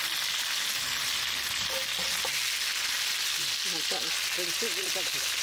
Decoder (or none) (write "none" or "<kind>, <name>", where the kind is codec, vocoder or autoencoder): none